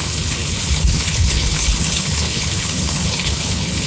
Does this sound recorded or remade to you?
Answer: remade